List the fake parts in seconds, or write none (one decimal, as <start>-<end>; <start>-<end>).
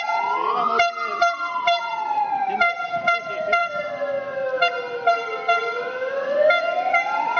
none